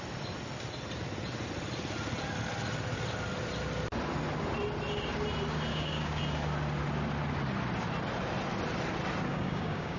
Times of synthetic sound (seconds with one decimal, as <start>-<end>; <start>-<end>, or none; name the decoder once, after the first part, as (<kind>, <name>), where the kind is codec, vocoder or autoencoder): 5.7-6.2 (codec, DAC); 9.3-10.0